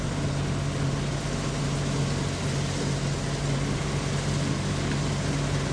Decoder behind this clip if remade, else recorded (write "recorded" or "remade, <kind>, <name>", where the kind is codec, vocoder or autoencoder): recorded